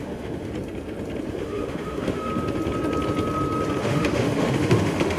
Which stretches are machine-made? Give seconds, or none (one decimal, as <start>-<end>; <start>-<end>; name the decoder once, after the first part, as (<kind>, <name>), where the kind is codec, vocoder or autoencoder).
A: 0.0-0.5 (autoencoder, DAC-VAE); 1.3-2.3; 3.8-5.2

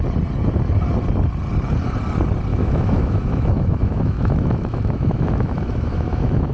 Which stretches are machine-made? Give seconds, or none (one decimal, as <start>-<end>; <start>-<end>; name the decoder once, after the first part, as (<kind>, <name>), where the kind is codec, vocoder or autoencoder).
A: 2.5-6.5 (autoencoder, DAC-VAE)

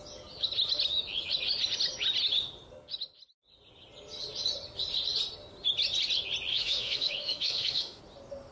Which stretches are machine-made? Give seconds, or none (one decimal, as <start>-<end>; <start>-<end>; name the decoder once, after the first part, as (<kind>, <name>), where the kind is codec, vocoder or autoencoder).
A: 6.5-8.0 (autoencoder, DAC-VAE)

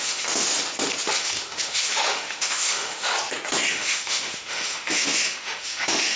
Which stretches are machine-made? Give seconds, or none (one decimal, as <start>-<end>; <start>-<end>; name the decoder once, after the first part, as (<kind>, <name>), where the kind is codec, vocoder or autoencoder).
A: 0.0-0.5 (autoencoder, DAC-VAE); 1.2-3.1; 3.7-6.2

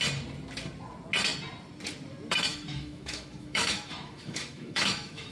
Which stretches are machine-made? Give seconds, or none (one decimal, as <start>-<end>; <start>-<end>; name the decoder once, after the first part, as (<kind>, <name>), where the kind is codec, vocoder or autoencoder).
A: 2.5-5.3 (autoencoder, DAC-VAE)

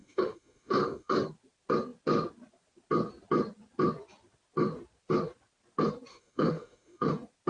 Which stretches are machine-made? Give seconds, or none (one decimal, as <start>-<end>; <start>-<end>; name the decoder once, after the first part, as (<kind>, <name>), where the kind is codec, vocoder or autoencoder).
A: 0.0-1.1 (autoencoder, DAC-VAE); 6.1-7.1

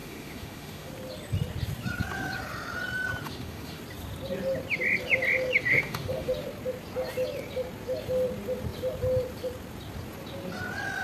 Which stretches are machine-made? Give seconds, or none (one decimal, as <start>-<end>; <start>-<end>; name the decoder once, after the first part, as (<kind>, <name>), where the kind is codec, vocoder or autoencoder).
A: 0.0-0.9 (autoencoder, DAC-VAE); 3.2-3.8; 5.6-6.3

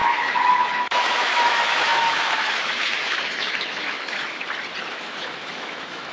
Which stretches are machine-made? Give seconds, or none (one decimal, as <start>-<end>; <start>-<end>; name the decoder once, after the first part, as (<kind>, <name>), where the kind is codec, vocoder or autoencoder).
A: 0.0-4.4 (autoencoder, DAC-VAE); 4.9-6.1